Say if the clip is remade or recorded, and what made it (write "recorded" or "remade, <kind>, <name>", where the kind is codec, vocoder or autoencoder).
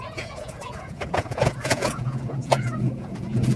remade, vocoder, Vocos